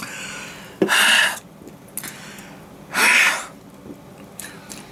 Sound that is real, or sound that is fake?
real